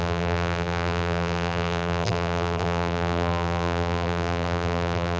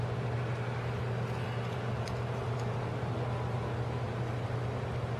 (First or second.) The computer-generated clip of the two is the first